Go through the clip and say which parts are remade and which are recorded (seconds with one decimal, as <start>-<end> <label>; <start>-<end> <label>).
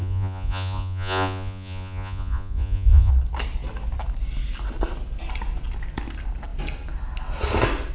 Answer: 0.0-3.1 remade; 3.1-7.9 recorded